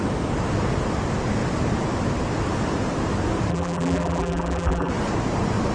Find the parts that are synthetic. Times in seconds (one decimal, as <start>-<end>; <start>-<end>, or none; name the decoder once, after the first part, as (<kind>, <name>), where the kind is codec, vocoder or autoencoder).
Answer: 3.5-4.9 (vocoder, BigVGAN v2)